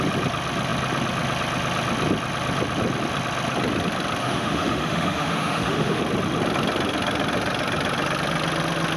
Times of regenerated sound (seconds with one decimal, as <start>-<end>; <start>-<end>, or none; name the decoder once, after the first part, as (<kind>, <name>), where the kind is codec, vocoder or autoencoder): 4.2-6.0 (autoencoder, DAC-VAE)